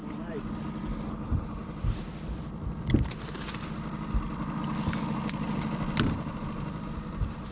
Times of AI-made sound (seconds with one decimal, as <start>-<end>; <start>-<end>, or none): 1.1-1.6; 6.1-7.5